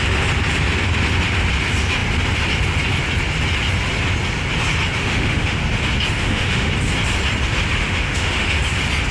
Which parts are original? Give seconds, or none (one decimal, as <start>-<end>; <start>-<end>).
0.0-5.0; 5.6-6.2; 6.7-7.8; 8.6-9.1